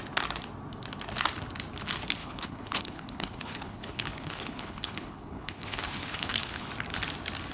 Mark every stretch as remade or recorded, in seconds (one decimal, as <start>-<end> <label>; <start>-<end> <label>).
0.0-2.2 recorded; 2.2-6.7 remade; 6.7-7.5 recorded